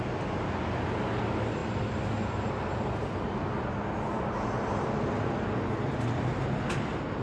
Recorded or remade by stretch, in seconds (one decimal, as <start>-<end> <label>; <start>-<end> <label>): 0.0-7.2 recorded

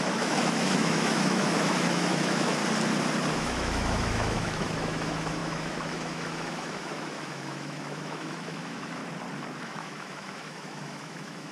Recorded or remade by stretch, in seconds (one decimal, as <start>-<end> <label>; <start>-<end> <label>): 0.0-2.6 remade; 2.6-3.3 recorded; 3.3-9.0 remade; 9.0-9.6 recorded; 9.6-11.5 remade

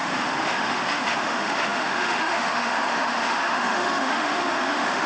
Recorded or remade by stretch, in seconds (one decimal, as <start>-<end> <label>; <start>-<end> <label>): 0.0-5.1 remade

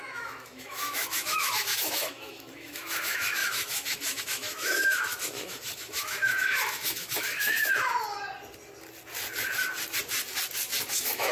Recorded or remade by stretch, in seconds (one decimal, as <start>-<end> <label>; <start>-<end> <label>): 0.0-7.9 remade; 7.9-10.9 recorded; 10.9-11.3 remade

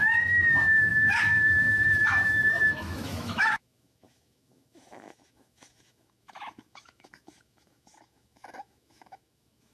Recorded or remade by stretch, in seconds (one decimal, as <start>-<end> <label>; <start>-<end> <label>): 0.0-9.7 remade